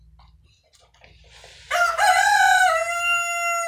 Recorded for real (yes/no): yes